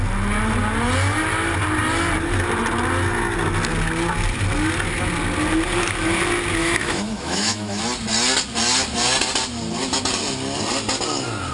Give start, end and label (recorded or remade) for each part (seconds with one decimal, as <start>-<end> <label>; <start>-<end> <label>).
0.0-6.6 recorded; 6.6-7.8 remade; 7.8-11.5 recorded